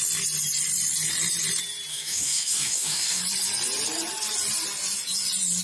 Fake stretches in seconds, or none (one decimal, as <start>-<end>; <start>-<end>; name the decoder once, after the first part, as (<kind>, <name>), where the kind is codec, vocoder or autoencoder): 1.9-3.2 (codec, DAC)